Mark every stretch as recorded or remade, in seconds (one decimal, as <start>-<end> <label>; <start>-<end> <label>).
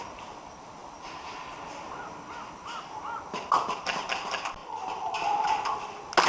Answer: 0.0-6.3 recorded